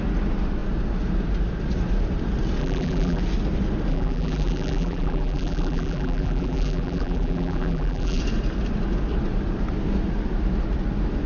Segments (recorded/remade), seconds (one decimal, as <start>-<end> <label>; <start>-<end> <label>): 0.0-2.6 recorded; 2.6-3.2 remade; 3.2-3.9 recorded; 3.9-8.2 remade; 8.2-11.3 recorded